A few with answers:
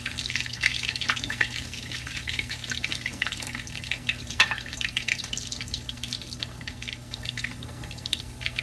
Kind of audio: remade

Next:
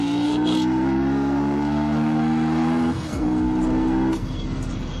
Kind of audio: remade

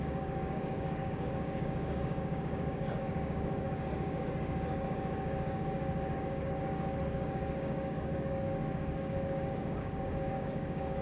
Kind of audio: remade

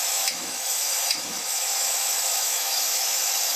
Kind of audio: remade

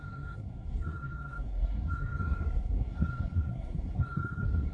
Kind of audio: remade